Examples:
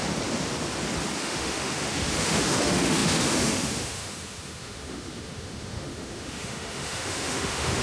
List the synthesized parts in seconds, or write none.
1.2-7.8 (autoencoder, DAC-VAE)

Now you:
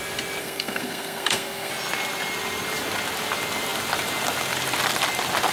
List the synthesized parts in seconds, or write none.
0.4-1.7 (codec, SNAC)

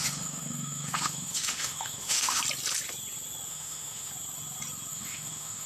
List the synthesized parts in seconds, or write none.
0.0-2.4 (autoencoder, DAC-VAE); 3.5-4.1; 4.9-5.7

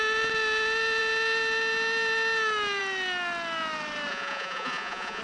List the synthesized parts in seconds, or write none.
4.1-5.2 (vocoder, Vocos)

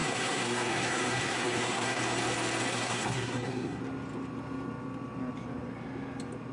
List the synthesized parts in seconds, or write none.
0.0-2.0 (codec, SNAC); 2.7-3.8

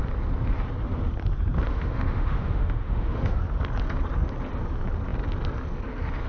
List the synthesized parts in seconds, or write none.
1.7-3.4 (autoencoder, DAC-VAE)

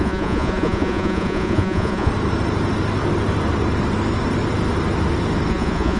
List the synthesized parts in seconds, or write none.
0.0-2.1 (vocoder, Vocos); 5.5-6.0

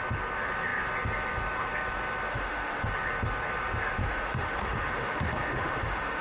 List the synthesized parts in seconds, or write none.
2.3-2.9 (autoencoder, DAC-VAE); 4.0-6.2